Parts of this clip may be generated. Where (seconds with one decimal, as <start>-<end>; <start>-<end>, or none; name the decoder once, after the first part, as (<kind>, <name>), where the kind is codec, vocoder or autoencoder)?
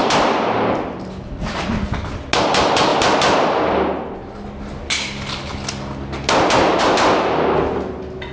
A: none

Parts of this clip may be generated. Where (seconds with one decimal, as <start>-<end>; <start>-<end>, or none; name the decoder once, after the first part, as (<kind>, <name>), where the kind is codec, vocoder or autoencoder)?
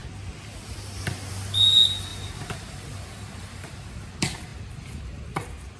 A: 2.1-3.9 (vocoder, BigVGAN v2)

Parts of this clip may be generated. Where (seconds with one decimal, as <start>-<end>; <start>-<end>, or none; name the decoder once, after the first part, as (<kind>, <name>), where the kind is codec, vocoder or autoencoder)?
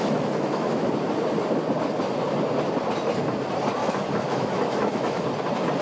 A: 0.0-0.9 (autoencoder, DAC-VAE); 3.8-5.3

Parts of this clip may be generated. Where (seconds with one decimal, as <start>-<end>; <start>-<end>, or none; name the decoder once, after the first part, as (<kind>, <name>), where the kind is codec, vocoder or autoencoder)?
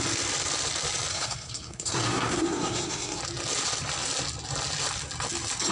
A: 1.1-3.2 (codec, SNAC)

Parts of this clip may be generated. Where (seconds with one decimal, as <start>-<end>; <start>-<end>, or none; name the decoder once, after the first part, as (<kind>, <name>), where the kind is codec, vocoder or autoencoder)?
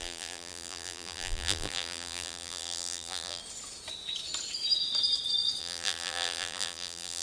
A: 0.0-3.4 (vocoder, BigVGAN v2); 5.6-7.2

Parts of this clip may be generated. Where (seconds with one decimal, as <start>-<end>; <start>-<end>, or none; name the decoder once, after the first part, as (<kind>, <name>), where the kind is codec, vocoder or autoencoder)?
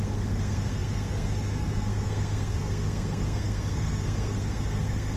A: 0.0-5.2 (codec, SNAC)